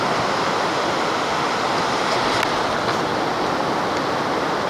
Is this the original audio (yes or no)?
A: yes